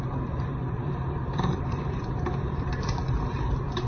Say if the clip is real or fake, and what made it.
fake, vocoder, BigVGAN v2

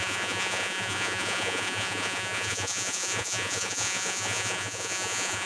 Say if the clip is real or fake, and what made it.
fake, vocoder, Vocos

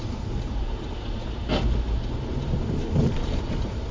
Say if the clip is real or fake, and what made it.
fake, vocoder, BigVGAN v2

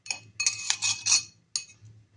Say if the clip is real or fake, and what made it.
real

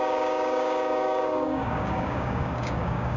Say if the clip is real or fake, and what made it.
fake, codec, DAC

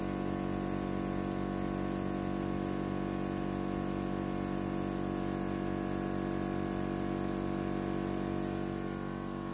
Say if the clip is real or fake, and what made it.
real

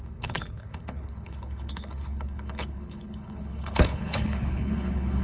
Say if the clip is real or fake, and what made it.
fake, codec, HILCodec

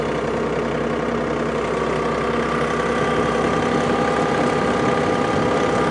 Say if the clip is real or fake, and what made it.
real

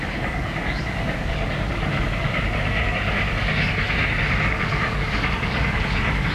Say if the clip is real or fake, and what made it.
fake, codec, DAC